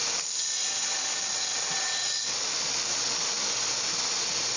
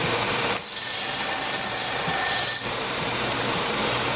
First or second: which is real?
first